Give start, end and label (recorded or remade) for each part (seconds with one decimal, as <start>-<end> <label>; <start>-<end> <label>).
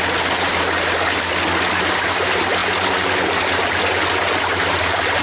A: 0.0-5.2 recorded